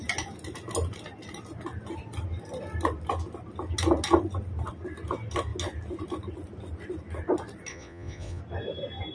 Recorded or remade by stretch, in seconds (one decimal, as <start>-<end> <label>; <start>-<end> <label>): 0.0-7.7 recorded; 7.7-8.4 remade; 8.4-9.1 recorded